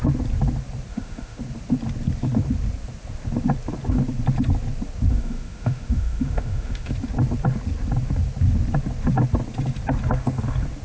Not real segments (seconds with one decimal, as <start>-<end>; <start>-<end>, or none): 0.9-1.4; 5.1-6.9